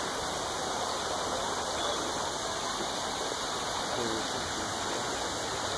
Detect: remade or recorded recorded